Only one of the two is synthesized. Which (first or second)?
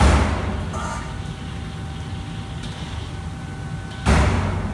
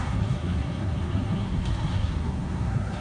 second